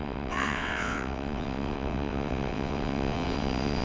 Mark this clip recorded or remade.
remade